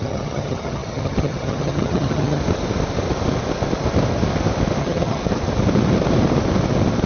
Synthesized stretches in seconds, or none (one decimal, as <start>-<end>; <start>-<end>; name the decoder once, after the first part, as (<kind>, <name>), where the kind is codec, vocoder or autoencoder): 0.0-2.4 (vocoder, HiFi-GAN); 4.8-5.2